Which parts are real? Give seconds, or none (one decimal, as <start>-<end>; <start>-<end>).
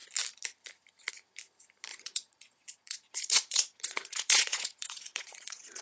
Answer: 0.0-1.9